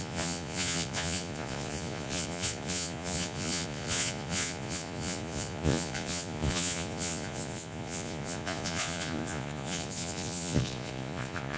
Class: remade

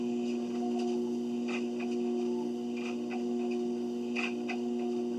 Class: recorded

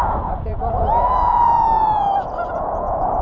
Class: remade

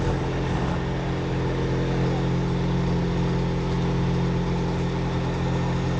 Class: recorded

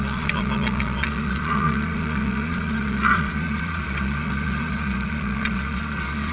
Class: remade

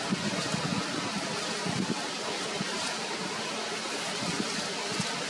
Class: recorded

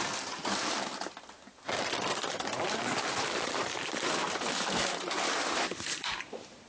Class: recorded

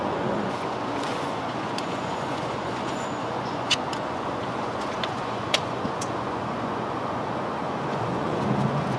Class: remade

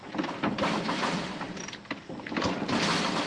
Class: recorded